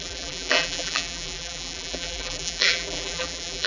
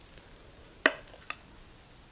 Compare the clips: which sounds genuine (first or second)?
second